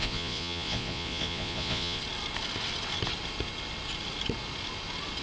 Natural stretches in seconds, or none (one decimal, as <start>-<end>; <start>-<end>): 2.0-5.2